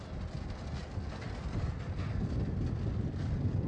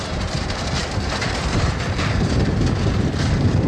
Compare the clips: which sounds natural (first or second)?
first